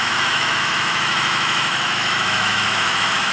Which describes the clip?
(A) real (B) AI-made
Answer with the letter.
B